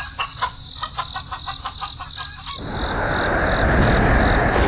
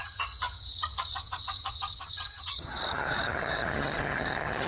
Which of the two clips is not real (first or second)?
second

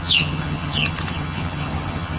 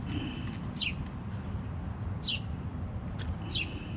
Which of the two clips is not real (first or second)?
first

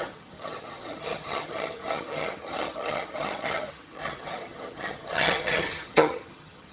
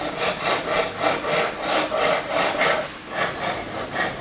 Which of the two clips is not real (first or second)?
first